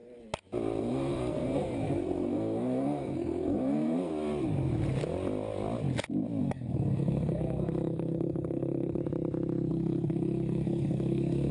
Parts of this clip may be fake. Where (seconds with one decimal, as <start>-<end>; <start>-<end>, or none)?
0.8-4.1; 6.4-9.0; 9.7-11.5